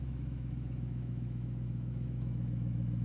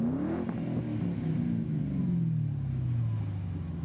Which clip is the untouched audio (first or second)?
second